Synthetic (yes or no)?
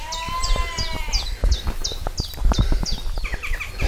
no